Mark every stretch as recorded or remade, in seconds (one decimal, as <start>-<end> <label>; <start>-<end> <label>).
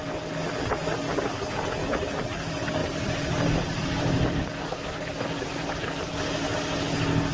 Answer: 0.0-2.8 recorded; 2.8-4.4 remade; 4.4-7.3 recorded